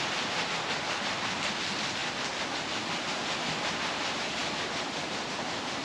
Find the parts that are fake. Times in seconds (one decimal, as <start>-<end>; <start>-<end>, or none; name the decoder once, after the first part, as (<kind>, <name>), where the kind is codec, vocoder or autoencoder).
none

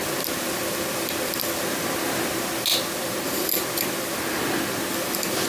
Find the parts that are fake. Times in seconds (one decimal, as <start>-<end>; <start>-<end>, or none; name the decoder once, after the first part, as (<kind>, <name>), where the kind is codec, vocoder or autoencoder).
none

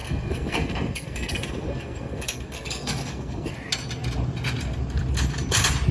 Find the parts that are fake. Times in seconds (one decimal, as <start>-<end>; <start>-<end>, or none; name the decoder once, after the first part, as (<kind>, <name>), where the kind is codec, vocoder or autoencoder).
0.0-3.5 (codec, SNAC)

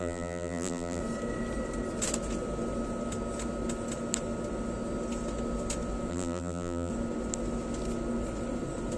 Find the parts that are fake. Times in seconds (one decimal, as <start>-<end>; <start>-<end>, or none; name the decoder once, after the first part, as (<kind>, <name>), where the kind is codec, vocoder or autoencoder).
0.0-1.0 (vocoder, BigVGAN v2); 6.1-6.9

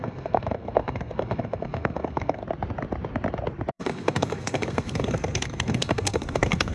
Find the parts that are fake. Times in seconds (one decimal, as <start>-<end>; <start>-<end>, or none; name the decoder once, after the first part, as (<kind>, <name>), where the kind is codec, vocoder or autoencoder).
0.0-2.4 (codec, SNAC); 3.7-6.7

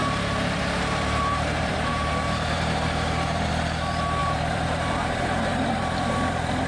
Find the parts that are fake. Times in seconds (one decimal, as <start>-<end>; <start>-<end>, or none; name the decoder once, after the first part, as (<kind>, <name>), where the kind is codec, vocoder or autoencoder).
0.0-3.5 (vocoder, BigVGAN v2); 4.2-6.1

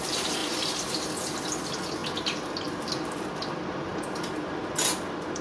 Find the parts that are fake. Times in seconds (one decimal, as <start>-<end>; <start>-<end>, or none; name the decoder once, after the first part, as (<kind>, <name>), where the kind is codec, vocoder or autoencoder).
none

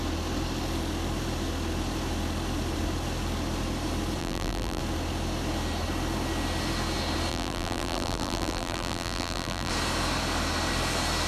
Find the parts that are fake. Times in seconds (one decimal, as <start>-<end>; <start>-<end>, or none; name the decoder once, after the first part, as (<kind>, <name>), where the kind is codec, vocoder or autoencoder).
4.2-4.8 (vocoder, BigVGAN v2); 7.3-9.7